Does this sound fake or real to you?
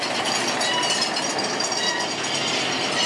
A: real